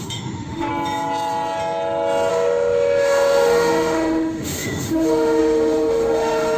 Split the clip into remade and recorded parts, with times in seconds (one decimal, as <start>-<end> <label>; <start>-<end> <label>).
0.0-0.7 remade; 0.7-2.3 recorded; 2.3-6.6 remade